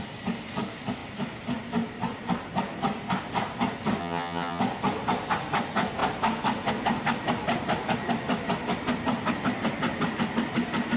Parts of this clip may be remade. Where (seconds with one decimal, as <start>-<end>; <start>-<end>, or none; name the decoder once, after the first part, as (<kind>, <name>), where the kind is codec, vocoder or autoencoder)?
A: 4.0-4.6 (vocoder, HiFi-GAN)